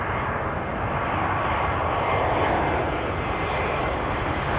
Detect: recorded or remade recorded